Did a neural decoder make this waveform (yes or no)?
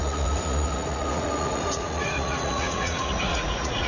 yes